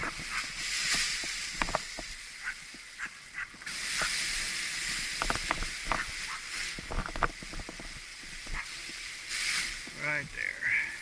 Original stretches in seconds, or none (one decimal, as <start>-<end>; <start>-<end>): 0.0-11.0